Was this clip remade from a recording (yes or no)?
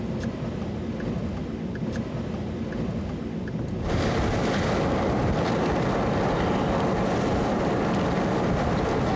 no